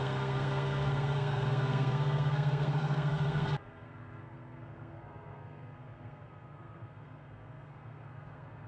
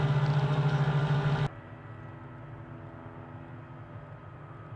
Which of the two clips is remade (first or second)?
first